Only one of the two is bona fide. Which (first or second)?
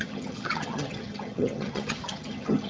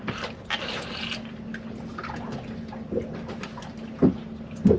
second